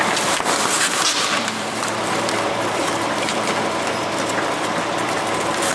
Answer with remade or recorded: remade